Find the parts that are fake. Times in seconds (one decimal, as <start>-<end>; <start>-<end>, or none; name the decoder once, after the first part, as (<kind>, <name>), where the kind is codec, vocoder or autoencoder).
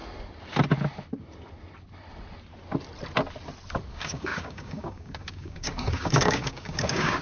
3.9-7.2 (codec, DAC)